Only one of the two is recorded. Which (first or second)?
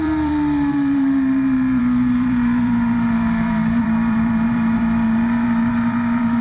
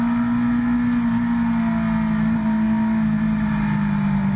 second